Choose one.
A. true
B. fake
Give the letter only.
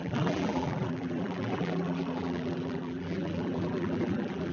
B